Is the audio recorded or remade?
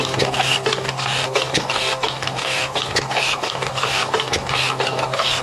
remade